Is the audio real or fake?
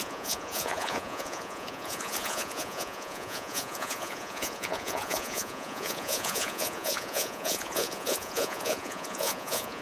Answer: fake